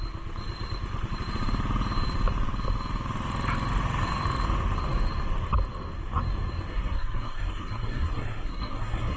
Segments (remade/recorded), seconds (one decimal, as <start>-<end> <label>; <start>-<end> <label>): 0.0-6.7 recorded; 6.7-9.2 remade